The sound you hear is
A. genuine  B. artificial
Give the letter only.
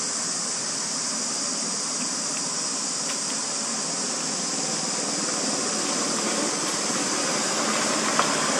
A